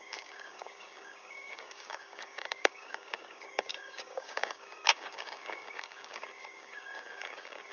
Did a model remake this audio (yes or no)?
yes